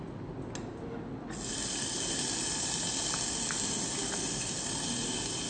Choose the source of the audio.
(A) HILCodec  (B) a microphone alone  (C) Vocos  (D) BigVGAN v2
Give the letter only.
B